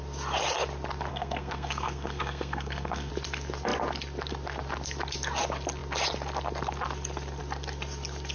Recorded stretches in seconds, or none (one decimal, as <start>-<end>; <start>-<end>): 0.0-1.1; 3.1-8.3